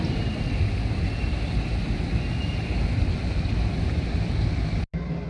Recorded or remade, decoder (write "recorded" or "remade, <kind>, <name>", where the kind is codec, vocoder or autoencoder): recorded